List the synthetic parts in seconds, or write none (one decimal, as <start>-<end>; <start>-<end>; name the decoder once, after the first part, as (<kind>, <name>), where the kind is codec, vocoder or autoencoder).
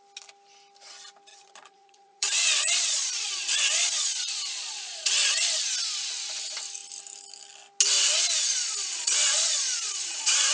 1.3-5.6 (vocoder, Vocos); 8.5-10.5